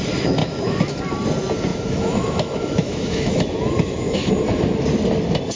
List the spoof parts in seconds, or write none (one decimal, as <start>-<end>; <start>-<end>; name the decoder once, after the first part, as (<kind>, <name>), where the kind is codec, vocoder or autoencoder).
0.4-1.0 (autoencoder, DAC-VAE); 1.7-4.3